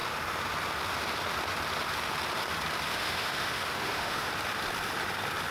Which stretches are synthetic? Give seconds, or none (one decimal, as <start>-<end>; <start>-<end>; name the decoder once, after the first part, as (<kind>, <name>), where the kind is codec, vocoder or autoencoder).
2.9-4.3 (autoencoder, DAC-VAE)